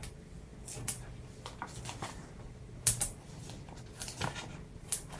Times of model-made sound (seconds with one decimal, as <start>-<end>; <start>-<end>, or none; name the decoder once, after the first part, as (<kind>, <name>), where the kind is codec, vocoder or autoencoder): none